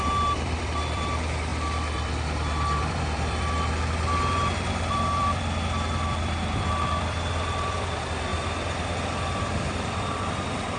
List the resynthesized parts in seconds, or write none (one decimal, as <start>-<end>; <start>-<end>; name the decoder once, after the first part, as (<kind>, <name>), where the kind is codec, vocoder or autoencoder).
0.0-10.8 (vocoder, BigVGAN v2)